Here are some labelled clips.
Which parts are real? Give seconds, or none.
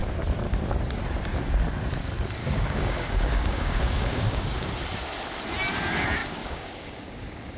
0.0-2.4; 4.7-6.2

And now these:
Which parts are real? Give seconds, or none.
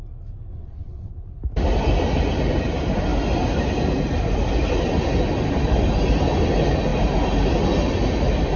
0.0-0.5; 1.1-8.6